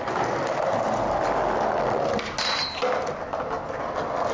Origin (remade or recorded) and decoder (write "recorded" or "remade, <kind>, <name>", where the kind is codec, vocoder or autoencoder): recorded